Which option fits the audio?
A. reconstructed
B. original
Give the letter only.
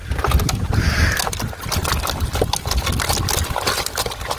B